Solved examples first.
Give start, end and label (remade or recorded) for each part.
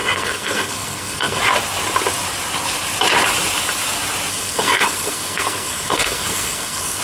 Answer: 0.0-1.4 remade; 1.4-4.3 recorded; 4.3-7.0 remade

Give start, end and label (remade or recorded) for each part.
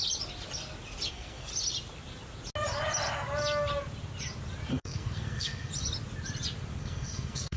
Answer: 0.0-1.1 recorded; 1.1-1.5 remade; 1.5-4.7 recorded; 4.7-5.7 remade; 5.7-6.8 recorded; 6.8-7.6 remade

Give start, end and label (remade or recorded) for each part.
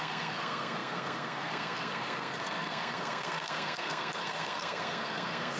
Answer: 0.0-5.6 remade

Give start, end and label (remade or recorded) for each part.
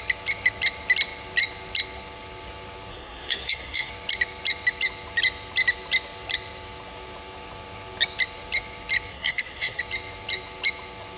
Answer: 0.0-2.9 recorded; 2.9-3.9 remade; 3.9-9.1 recorded; 9.1-9.8 remade; 9.8-11.2 recorded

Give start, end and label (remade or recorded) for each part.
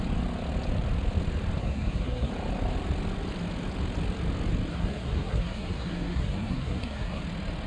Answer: 0.0-1.6 recorded; 1.6-2.3 remade; 2.3-4.7 recorded; 4.7-7.2 remade; 7.2-7.7 recorded